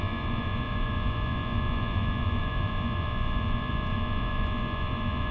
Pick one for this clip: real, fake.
fake